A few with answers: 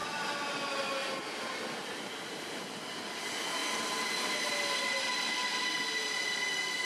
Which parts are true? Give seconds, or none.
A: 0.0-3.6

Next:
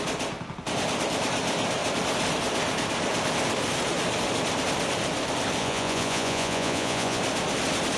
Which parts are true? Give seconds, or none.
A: 0.0-5.6; 7.2-8.0